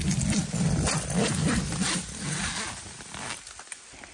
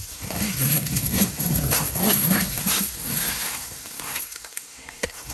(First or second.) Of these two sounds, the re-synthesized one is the second